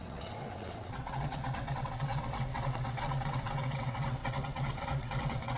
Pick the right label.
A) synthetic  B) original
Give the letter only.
A